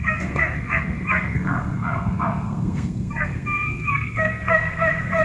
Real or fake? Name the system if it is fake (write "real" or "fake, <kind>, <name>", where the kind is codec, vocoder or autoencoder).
fake, codec, SNAC